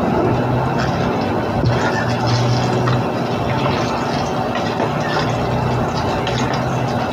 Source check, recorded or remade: recorded